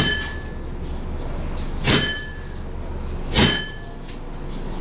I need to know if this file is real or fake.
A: real